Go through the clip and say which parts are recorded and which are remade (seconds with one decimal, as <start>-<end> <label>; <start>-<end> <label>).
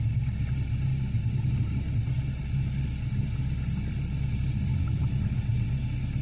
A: 0.0-4.7 recorded; 4.7-5.2 remade; 5.2-6.2 recorded